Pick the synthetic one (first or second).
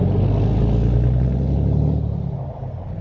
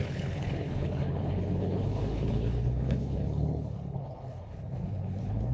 second